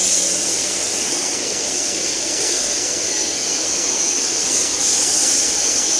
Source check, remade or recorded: remade